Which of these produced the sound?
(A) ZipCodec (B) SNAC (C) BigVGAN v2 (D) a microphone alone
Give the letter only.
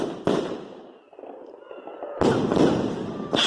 D